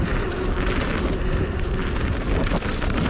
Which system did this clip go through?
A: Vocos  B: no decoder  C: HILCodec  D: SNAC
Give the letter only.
B